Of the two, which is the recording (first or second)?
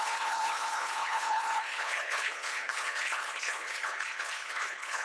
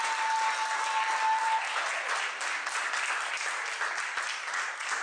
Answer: second